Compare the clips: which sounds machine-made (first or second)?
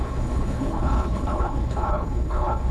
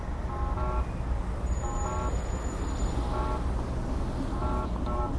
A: first